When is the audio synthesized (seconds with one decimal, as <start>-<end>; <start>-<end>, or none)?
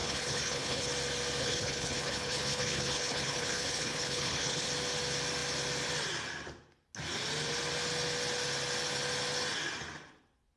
0.0-0.9; 1.4-4.7